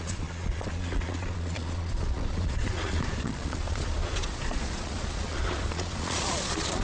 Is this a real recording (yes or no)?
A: no